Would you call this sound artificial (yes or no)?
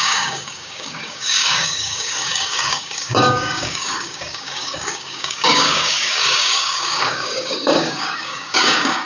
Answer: yes